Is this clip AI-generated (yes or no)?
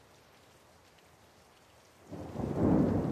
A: no